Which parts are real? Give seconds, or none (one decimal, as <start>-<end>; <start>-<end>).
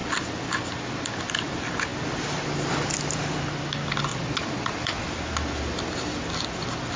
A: 0.0-4.1; 5.0-7.0